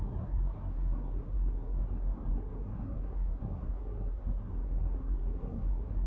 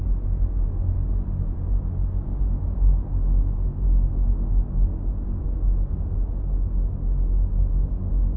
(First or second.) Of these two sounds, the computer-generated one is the first